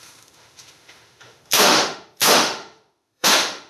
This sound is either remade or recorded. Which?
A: remade